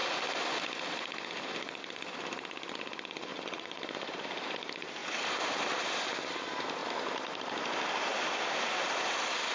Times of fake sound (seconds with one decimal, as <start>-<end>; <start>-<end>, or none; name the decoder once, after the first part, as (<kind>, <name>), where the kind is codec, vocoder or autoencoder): 3.3-4.2 (vocoder, BigVGAN v2)